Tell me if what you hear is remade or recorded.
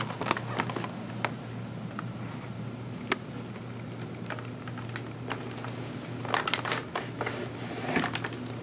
recorded